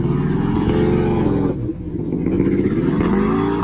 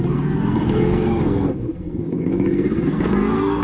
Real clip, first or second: first